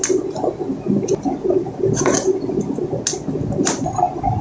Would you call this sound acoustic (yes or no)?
yes